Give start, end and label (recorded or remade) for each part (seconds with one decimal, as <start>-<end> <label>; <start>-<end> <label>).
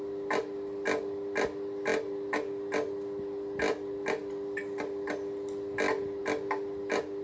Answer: 0.0-7.2 recorded